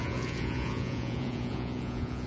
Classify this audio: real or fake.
fake